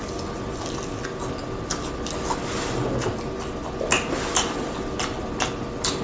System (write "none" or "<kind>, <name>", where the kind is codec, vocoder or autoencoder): none